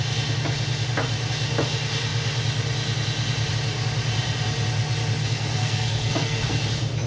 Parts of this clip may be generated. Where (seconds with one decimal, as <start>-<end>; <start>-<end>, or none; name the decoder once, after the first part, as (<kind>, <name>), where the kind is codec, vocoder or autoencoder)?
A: 5.2-6.6 (codec, SNAC)